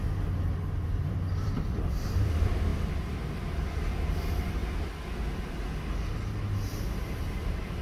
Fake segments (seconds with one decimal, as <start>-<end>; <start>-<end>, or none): 0.0-4.6; 6.7-7.8